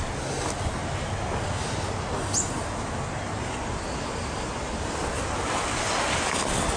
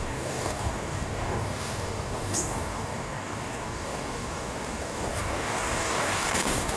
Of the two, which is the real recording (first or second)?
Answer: first